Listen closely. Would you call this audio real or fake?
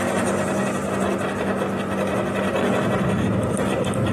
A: real